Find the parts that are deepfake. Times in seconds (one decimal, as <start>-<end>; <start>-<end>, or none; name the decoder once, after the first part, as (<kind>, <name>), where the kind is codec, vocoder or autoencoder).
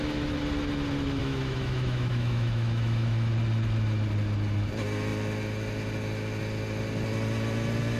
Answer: 1.2-3.3 (autoencoder, DAC-VAE)